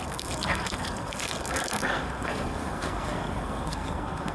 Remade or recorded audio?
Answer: remade